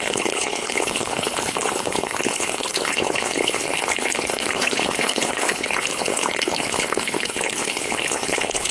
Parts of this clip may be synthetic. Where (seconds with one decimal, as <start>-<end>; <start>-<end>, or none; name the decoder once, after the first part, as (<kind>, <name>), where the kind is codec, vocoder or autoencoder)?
0.0-8.7 (codec, HILCodec)